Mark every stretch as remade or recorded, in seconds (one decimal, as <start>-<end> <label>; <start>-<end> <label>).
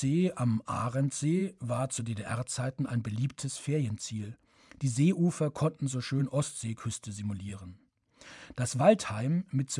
0.0-1.4 recorded; 1.4-2.0 remade; 2.0-9.8 recorded